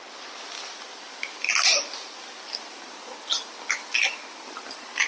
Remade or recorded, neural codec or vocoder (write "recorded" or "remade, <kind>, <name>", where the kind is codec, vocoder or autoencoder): recorded